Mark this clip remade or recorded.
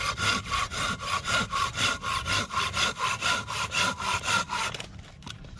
recorded